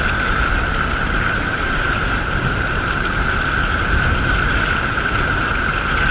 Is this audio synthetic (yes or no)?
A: no